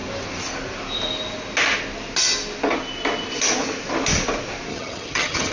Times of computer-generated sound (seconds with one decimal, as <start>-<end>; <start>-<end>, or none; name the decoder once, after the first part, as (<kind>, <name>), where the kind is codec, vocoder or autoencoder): 4.7-5.5 (vocoder, HiFi-GAN)